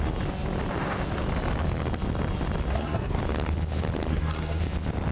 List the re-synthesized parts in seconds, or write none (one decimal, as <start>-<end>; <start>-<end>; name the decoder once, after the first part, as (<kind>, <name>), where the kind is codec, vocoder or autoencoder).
2.7-3.2 (codec, SNAC); 4.1-4.6